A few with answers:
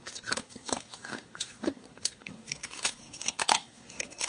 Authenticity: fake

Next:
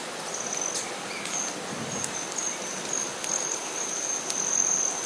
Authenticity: real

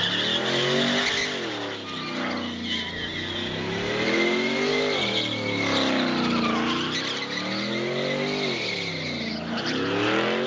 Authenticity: real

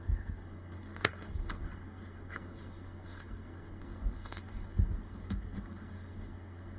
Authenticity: fake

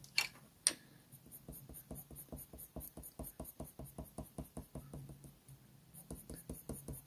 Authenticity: real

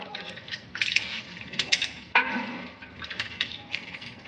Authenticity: fake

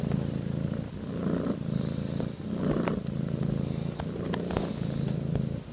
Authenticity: real